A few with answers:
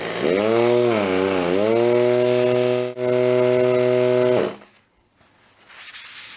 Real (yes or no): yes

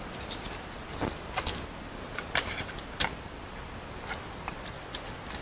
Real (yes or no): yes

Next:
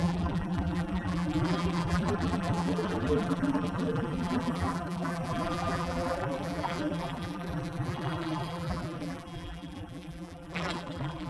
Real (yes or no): no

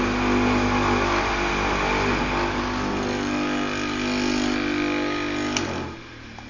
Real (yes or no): yes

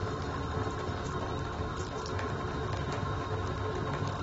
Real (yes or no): yes